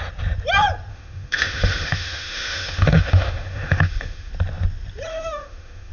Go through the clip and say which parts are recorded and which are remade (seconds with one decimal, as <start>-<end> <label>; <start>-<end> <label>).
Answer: 0.0-0.9 recorded; 0.9-4.3 remade; 4.3-5.1 recorded; 5.1-5.9 remade